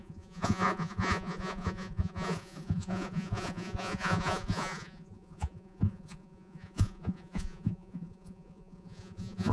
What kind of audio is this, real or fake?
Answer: fake